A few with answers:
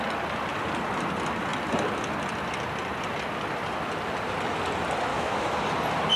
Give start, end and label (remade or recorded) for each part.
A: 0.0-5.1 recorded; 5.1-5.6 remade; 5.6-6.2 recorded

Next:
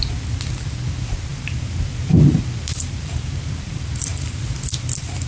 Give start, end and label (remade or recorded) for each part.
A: 0.0-1.3 recorded; 1.3-4.4 remade; 4.4-5.3 recorded

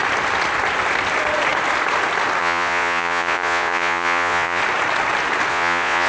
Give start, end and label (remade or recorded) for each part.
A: 0.0-2.4 recorded; 2.4-4.6 remade; 4.6-5.5 recorded; 5.5-6.1 remade

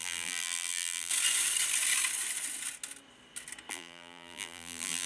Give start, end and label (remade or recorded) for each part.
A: 0.0-1.1 remade; 1.1-3.7 recorded; 3.7-5.1 remade

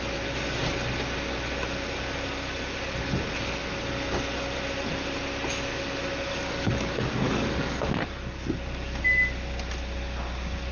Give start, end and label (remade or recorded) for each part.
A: 0.0-6.3 recorded; 6.3-7.9 remade; 7.9-10.7 recorded